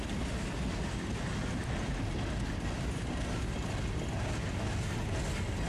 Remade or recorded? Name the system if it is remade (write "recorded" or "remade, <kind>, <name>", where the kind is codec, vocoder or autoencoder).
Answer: recorded